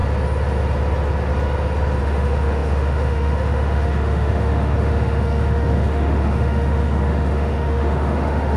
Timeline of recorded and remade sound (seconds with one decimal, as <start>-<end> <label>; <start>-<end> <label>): 0.0-2.0 recorded; 2.0-8.6 remade